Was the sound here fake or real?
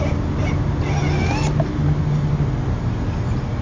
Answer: real